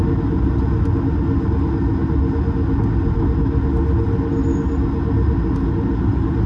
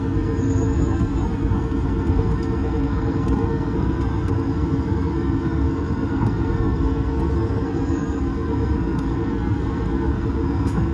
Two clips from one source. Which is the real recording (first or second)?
first